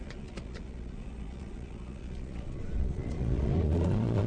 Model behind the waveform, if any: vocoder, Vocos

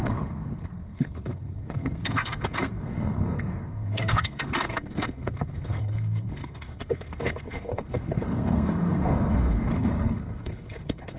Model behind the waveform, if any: codec, SNAC